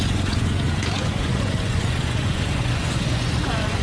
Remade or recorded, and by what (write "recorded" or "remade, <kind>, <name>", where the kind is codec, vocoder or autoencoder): remade, vocoder, Vocos